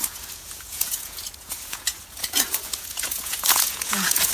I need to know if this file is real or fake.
fake